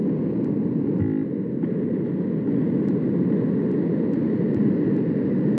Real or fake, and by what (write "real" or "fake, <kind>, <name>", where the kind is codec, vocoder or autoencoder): real